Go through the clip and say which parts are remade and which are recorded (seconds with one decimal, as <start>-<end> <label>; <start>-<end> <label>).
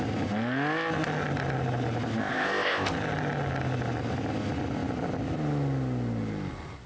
0.0-2.2 recorded; 2.2-2.9 remade; 2.9-6.9 recorded